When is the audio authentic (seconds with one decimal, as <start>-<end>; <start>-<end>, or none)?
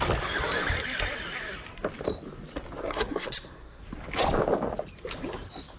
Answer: 0.0-2.8; 3.8-5.8